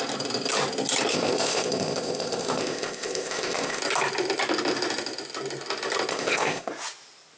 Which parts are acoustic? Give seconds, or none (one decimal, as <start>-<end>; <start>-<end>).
0.0-1.1; 3.8-6.1; 6.7-7.4